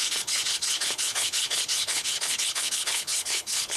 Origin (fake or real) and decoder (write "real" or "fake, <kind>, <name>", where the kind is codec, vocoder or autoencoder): fake, codec, HILCodec